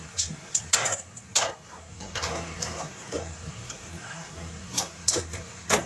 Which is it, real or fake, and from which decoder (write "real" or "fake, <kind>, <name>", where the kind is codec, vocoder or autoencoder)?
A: fake, codec, SNAC